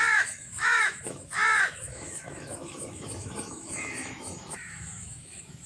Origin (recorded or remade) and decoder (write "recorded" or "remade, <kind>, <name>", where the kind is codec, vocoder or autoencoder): remade, autoencoder, DAC-VAE